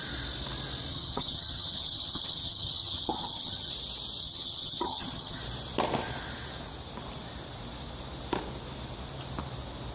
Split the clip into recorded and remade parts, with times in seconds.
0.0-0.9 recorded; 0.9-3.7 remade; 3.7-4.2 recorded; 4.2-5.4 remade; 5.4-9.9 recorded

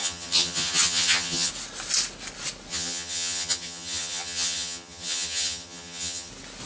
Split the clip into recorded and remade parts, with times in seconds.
0.0-1.5 remade; 1.5-2.7 recorded; 2.7-6.3 remade; 6.3-6.7 recorded

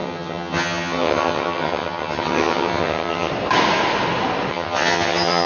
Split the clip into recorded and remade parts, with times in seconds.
0.0-3.3 remade; 3.3-4.5 recorded; 4.5-5.5 remade